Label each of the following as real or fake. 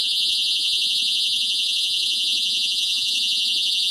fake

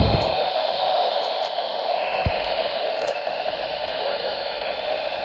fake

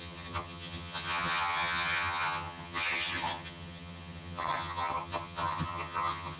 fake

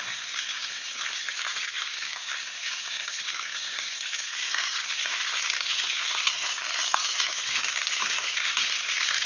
fake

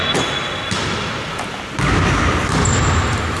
real